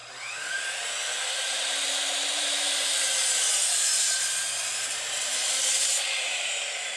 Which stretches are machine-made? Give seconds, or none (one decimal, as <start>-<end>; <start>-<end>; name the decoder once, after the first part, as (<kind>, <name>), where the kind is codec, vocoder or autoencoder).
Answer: 0.0-7.0 (vocoder, BigVGAN v2)